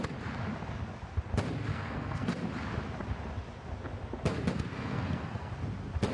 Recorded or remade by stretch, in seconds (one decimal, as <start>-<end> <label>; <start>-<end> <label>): 0.0-1.7 recorded; 1.7-2.4 remade; 2.4-4.7 recorded; 4.7-5.5 remade; 5.5-6.1 recorded